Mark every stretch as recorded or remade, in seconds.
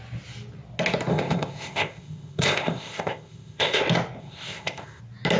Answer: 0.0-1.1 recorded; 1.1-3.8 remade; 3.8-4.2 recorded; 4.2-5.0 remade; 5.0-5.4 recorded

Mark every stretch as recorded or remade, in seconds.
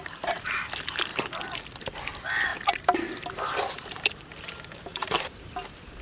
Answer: 0.0-2.5 remade; 2.5-3.7 recorded; 3.7-6.0 remade